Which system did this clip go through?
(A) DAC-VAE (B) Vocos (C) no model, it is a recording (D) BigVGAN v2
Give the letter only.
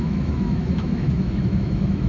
A